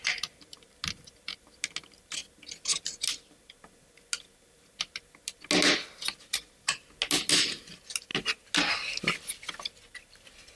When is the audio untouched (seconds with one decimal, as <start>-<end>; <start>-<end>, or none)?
0.0-10.6